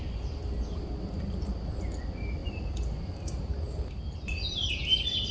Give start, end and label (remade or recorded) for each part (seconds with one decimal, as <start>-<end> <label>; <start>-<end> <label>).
0.0-5.3 recorded